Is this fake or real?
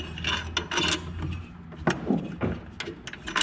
real